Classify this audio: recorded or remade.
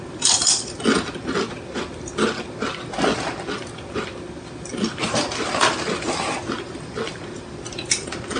recorded